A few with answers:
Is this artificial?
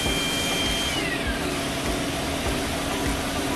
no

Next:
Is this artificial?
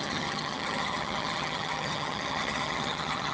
yes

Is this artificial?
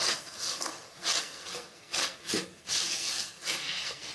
yes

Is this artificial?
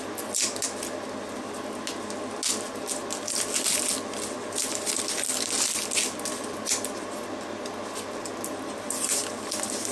no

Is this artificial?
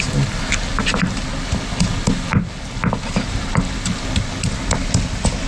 no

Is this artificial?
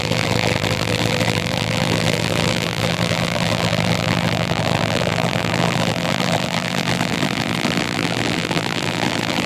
yes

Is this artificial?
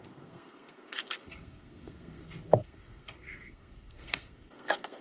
yes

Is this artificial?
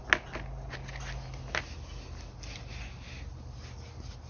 no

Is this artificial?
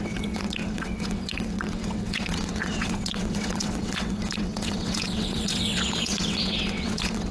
yes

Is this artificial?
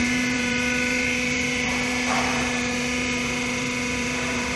yes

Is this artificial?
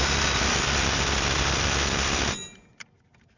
no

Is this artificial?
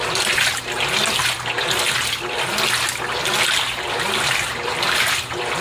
no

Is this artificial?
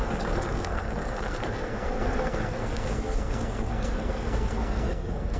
yes